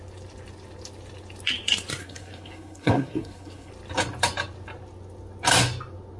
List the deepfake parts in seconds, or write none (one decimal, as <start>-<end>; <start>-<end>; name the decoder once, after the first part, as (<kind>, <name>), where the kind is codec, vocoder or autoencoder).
2.0-3.7 (codec, SNAC)